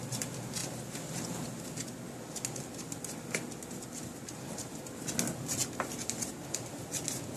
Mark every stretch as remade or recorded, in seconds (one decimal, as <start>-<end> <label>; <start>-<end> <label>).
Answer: 0.0-7.4 recorded